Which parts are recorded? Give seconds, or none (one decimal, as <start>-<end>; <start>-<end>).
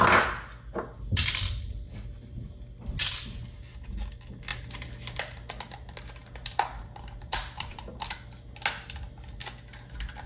0.0-6.2; 7.9-10.3